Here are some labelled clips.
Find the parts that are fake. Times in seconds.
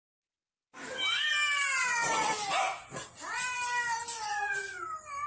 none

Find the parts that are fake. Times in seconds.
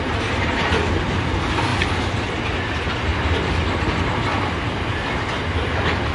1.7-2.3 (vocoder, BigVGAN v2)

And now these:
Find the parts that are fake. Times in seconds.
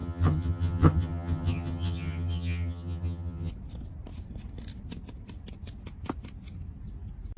0.0-3.5 (vocoder, HiFi-GAN)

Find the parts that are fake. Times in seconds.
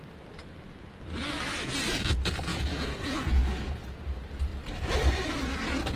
2.5-3.4 (vocoder, Vocos)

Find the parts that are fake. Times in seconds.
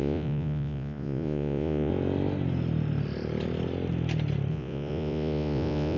0.0-1.9 (vocoder, Vocos); 4.5-6.0